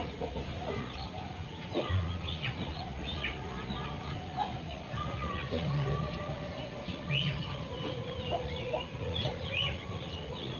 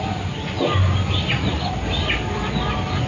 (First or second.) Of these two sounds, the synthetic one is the first